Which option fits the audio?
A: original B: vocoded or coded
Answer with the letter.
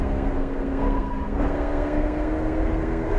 B